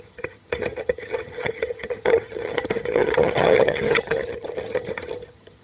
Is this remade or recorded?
remade